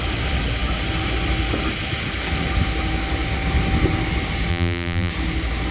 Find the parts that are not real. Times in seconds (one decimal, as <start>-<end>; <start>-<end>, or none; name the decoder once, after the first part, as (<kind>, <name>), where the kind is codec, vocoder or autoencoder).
4.5-5.1 (vocoder, BigVGAN v2)